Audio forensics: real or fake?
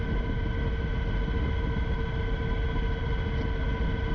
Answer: real